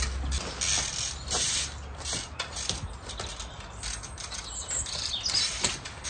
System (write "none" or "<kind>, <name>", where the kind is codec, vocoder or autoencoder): none